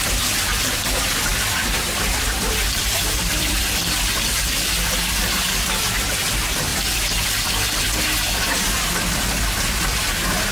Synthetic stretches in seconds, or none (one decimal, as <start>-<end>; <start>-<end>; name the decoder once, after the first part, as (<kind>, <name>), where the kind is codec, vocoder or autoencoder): 2.8-4.4 (vocoder, BigVGAN v2); 6.7-7.8